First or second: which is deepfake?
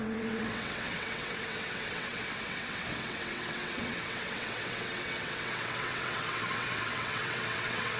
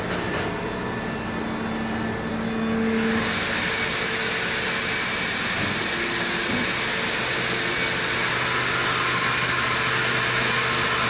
first